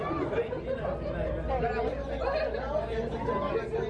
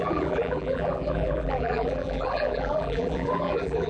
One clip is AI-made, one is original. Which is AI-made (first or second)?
second